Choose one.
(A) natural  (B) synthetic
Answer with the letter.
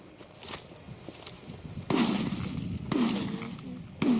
A